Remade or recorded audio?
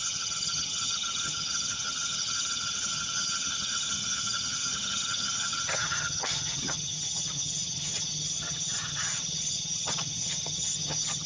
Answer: remade